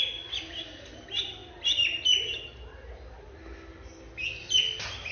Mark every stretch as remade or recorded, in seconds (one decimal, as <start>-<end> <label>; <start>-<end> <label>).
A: 0.0-5.1 recorded